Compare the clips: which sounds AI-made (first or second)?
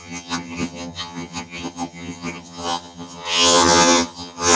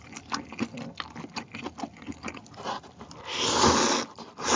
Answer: first